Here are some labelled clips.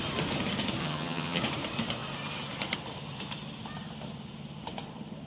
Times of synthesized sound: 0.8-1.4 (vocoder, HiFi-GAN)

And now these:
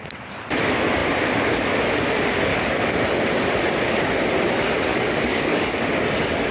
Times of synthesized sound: 2.5-3.0 (codec, DAC); 4.9-5.8

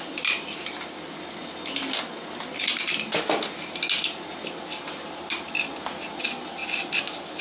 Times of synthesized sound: none